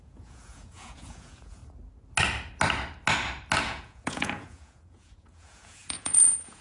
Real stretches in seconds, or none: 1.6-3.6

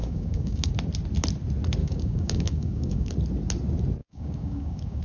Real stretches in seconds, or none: 0.7-1.8; 3.1-4.0

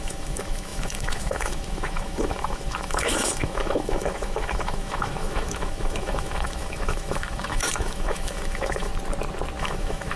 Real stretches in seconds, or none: 8.9-9.6

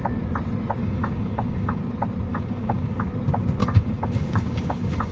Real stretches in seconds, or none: 0.0-0.8; 1.8-2.3; 3.1-3.6

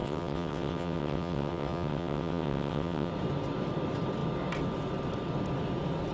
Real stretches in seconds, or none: 3.1-6.1

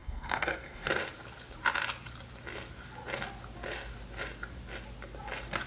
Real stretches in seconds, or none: 0.9-5.7

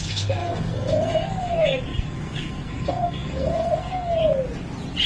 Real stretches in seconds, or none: 4.2-5.1

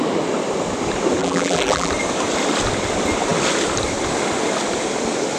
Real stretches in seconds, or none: 0.0-1.2; 1.9-5.4